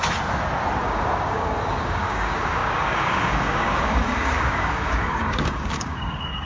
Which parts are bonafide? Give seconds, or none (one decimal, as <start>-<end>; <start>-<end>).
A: 0.0-0.8